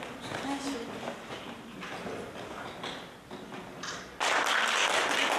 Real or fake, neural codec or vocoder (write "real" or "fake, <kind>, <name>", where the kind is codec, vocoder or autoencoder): real